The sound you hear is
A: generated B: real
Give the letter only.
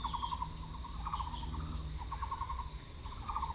B